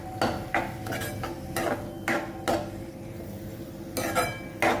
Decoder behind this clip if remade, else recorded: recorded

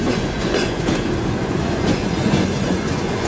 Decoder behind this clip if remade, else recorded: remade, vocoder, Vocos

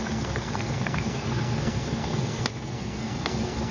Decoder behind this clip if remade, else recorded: remade, codec, SNAC